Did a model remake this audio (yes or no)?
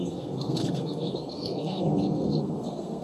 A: yes